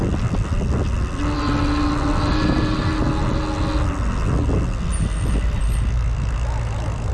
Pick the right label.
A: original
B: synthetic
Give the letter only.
A